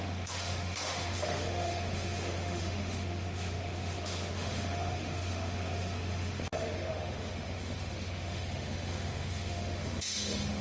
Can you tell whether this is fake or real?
fake